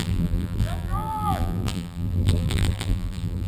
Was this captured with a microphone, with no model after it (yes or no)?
no